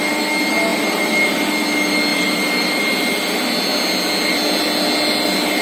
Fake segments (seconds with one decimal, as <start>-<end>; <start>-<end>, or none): 0.7-1.5; 2.1-2.8